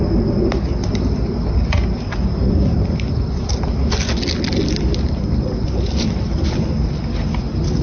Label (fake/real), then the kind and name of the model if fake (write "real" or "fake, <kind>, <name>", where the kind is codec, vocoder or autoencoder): real